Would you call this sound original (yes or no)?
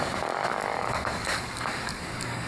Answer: no